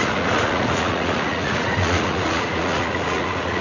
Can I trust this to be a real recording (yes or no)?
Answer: no